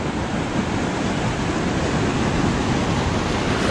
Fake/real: real